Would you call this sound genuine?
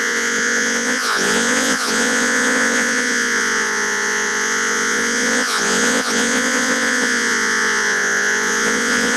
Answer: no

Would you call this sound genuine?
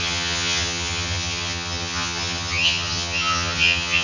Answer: no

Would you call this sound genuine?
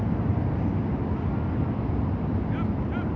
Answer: yes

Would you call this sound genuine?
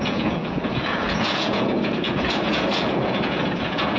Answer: no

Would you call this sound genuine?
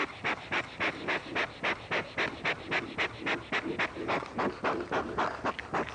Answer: yes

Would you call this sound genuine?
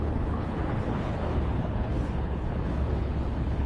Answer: no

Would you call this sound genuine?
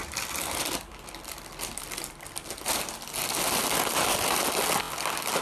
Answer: yes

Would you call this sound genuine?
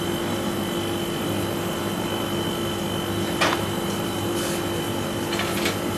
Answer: yes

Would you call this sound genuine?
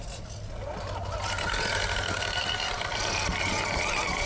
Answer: yes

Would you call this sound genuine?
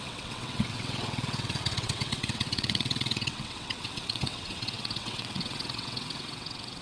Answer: no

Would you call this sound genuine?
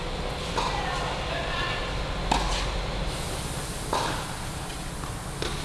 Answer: yes